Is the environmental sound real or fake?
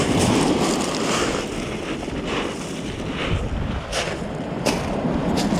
real